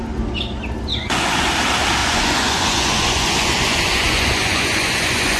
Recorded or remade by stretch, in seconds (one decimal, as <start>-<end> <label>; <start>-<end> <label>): 0.0-0.9 recorded; 0.9-1.5 remade; 1.5-2.0 recorded; 2.0-5.4 remade